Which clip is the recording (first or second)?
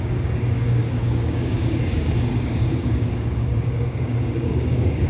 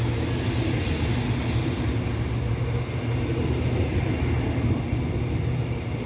second